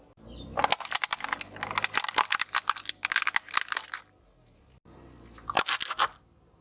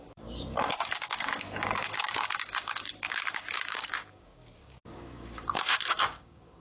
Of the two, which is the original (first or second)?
first